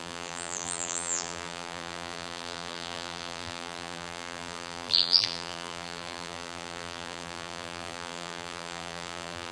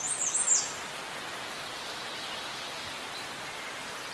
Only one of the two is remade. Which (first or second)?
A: first